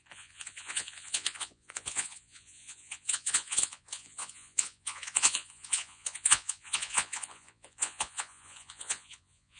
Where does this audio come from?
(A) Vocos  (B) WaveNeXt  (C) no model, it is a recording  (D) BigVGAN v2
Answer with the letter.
A